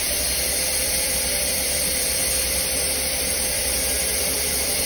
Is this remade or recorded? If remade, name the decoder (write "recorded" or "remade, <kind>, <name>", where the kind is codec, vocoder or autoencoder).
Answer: remade, vocoder, BigVGAN v2